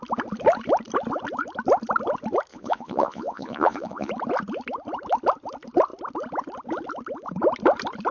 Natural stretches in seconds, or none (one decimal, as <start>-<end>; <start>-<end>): 0.0-2.5; 4.1-8.1